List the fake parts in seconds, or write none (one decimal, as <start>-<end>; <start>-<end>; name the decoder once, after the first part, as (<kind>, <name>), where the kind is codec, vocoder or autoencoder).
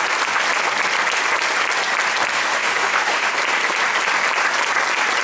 2.3-3.3 (autoencoder, DAC-VAE)